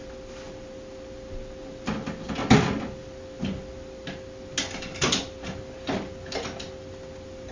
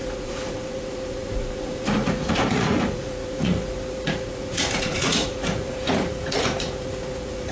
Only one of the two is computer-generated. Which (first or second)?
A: second